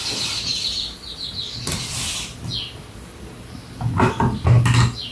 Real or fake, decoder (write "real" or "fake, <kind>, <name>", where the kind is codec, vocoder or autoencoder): real